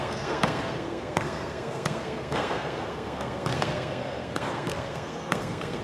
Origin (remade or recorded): remade